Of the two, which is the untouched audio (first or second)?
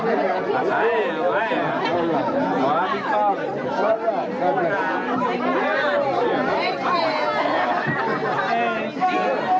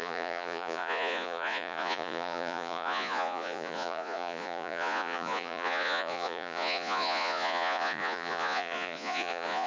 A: first